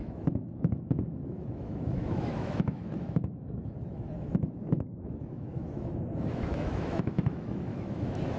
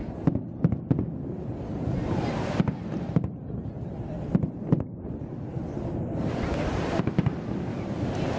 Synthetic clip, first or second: first